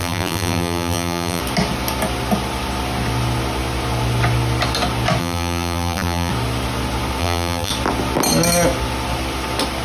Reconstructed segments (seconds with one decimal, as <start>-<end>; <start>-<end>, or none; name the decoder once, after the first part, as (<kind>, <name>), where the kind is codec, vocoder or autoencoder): 0.0-1.4 (vocoder, BigVGAN v2); 5.2-6.3; 7.2-7.7